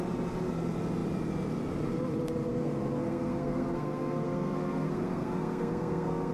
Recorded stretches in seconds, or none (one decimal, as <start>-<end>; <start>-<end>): 0.0-2.5